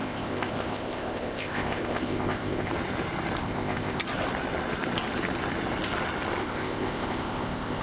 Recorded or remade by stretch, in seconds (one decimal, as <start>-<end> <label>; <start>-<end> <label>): 0.0-2.7 remade; 2.7-3.4 recorded; 3.4-4.0 remade; 4.0-6.4 recorded; 6.4-7.8 remade